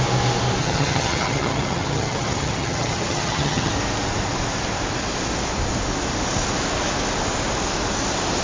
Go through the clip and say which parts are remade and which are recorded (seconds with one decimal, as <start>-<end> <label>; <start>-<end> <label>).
0.0-0.6 recorded; 0.6-3.7 remade; 3.7-8.4 recorded